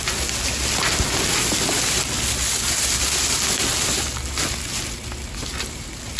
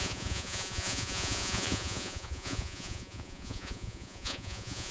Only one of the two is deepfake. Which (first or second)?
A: second